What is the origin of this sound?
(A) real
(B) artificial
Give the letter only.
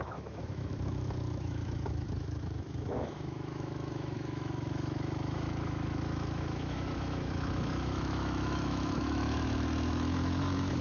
B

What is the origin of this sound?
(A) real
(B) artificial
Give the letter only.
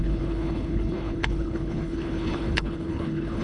B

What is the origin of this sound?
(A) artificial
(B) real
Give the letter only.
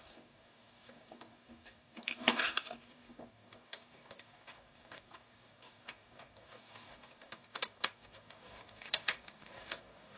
A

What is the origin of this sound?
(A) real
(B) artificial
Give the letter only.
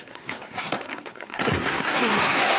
B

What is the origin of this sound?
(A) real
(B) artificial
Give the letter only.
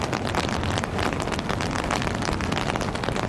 B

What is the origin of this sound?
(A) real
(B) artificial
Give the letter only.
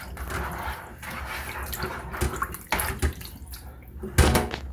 A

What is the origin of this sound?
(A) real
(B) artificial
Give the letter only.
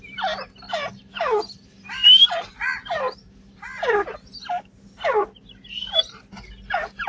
A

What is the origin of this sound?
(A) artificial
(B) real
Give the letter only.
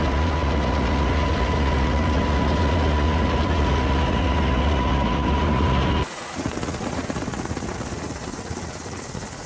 A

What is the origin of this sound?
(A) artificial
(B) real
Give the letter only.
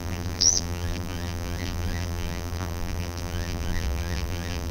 A